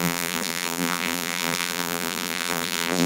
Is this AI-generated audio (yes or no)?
yes